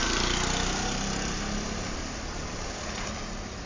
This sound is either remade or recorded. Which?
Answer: recorded